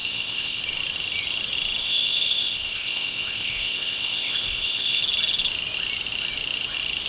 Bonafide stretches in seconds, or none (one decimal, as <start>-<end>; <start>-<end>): 0.6-1.8; 5.0-7.1